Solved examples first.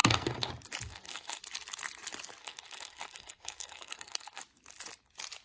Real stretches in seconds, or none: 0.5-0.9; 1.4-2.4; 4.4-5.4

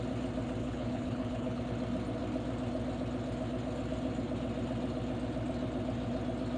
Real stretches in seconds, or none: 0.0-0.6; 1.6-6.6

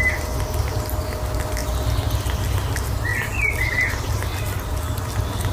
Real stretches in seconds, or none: 0.0-5.5

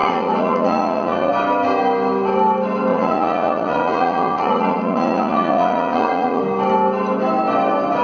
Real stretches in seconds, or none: 1.3-2.9; 6.4-8.0